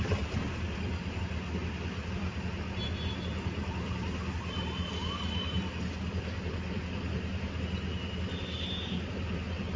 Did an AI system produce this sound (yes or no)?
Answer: no